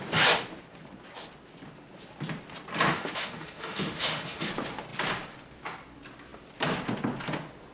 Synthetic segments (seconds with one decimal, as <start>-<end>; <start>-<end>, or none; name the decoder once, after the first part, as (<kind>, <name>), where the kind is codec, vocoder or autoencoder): 2.9-4.5 (autoencoder, DAC-VAE)